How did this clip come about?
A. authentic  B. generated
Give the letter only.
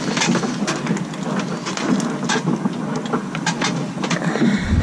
A